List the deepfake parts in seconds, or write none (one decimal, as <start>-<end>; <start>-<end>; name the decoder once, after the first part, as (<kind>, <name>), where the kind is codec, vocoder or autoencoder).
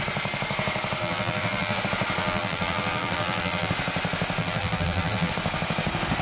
1.0-1.8 (vocoder, BigVGAN v2); 2.2-3.7; 4.4-5.3